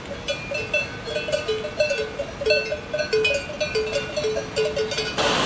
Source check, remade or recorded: recorded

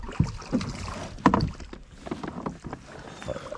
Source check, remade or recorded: recorded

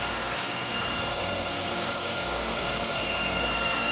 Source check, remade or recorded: remade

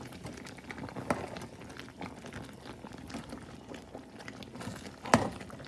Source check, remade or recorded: recorded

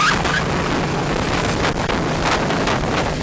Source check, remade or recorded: recorded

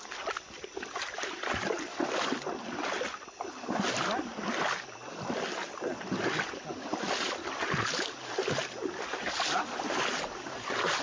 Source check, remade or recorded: recorded